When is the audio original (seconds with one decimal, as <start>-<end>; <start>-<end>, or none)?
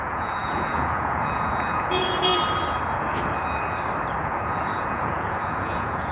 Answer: 2.3-4.2